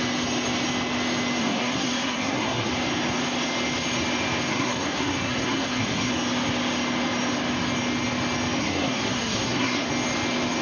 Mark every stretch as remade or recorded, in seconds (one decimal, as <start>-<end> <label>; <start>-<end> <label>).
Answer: 0.0-1.4 recorded; 1.4-2.7 remade; 2.7-4.5 recorded; 4.5-6.1 remade; 6.1-8.6 recorded; 8.6-9.9 remade; 9.9-10.6 recorded